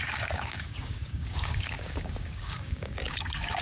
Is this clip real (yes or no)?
no